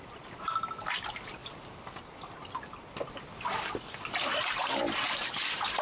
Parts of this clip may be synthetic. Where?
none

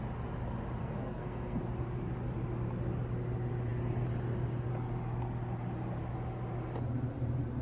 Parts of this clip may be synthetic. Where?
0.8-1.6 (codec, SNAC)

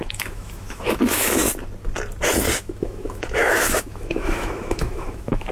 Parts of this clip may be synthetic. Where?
0.0-1.4 (autoencoder, DAC-VAE); 2.6-5.5

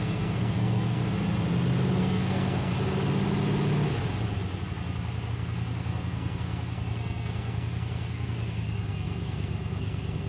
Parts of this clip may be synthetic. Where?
0.0-1.0 (codec, SNAC); 2.0-2.7; 5.3-10.3

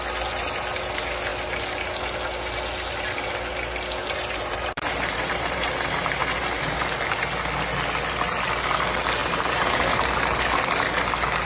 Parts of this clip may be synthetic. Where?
4.0-6.8 (vocoder, BigVGAN v2); 9.2-9.8